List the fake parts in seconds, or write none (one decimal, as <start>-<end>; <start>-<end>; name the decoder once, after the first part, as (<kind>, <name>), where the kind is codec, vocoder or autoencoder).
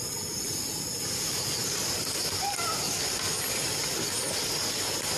none